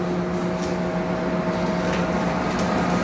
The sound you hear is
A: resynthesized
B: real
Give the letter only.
B